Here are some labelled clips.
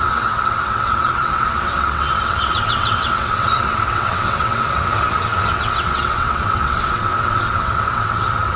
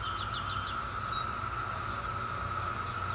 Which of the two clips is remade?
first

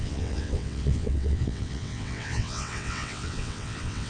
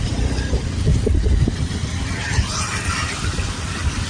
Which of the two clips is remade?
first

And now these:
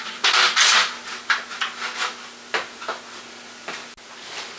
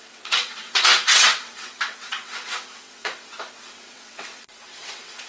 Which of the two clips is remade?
second